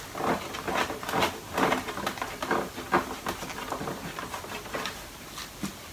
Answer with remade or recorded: recorded